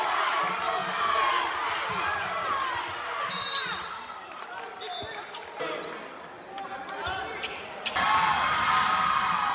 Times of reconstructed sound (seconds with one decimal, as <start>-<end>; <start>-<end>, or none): none